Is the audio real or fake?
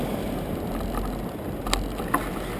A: real